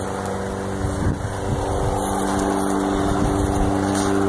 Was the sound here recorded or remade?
recorded